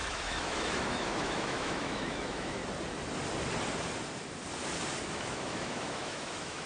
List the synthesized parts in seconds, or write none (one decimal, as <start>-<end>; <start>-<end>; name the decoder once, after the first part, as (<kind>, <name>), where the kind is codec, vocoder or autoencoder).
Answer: 0.0-2.6 (autoencoder, DAC-VAE); 5.1-6.7